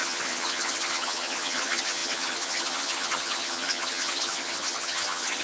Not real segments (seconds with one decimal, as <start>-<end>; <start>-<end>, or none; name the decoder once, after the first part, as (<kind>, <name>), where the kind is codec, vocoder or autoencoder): 0.0-5.4 (vocoder, HiFi-GAN)